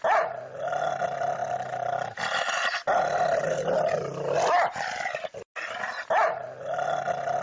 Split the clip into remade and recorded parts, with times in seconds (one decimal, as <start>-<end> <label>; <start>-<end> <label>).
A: 0.0-7.4 recorded